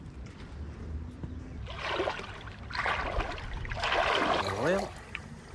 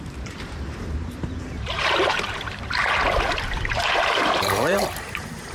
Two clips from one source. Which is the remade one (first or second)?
second